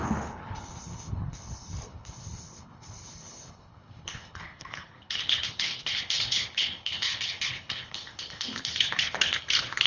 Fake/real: fake